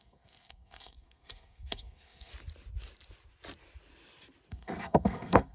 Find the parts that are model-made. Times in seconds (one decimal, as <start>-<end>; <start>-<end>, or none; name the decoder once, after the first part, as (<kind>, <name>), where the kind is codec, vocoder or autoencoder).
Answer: 0.0-2.3 (codec, SNAC); 4.5-5.5